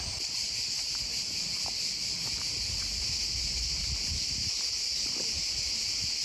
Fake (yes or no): no